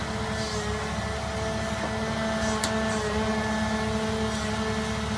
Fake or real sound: real